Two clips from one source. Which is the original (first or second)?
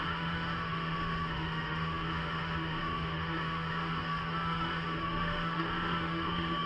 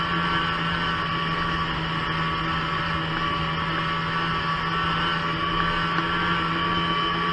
second